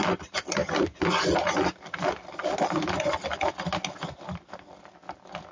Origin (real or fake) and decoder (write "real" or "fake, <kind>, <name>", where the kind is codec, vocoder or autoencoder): real